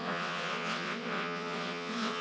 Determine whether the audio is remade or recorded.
remade